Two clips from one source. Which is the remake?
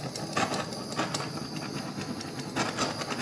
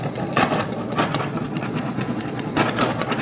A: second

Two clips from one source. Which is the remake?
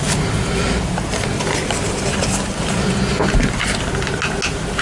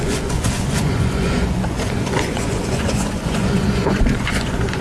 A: second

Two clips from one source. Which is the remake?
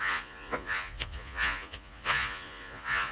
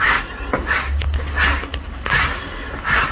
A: first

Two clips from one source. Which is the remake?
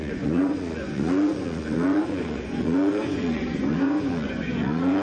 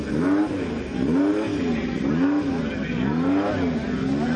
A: first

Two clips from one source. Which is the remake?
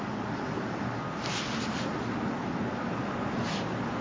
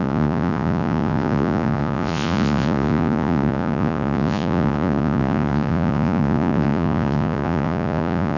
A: second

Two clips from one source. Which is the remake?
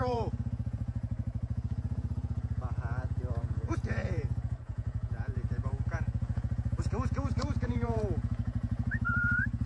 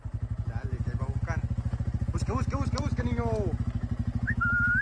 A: first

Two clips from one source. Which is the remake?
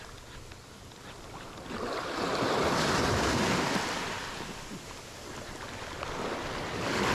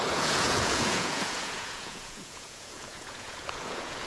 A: second